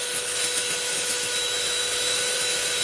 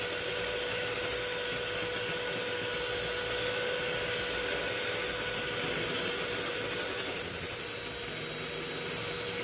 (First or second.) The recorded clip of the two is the second